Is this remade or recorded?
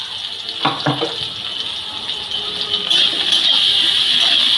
recorded